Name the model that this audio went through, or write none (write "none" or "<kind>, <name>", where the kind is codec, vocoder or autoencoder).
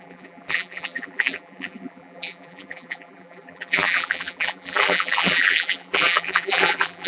vocoder, BigVGAN v2